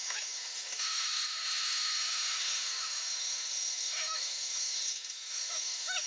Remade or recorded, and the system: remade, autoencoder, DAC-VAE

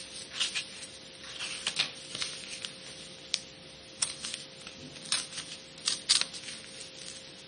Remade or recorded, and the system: recorded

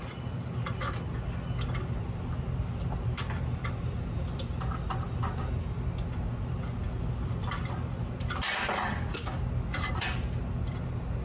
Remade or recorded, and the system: recorded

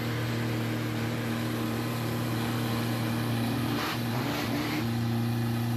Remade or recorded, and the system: recorded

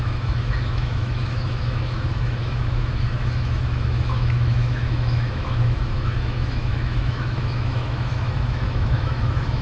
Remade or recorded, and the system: remade, autoencoder, DAC-VAE